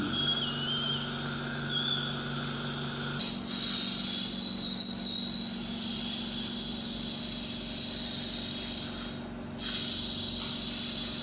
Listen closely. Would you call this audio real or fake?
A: real